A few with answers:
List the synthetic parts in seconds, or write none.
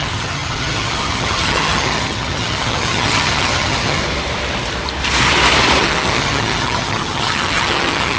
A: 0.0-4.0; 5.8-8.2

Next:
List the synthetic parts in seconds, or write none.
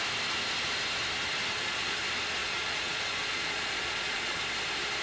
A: 1.5-2.0; 2.4-4.4